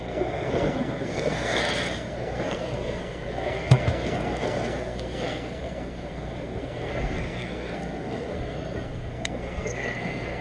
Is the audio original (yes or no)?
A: no